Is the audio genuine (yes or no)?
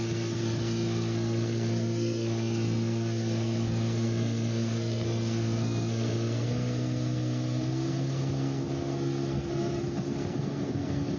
no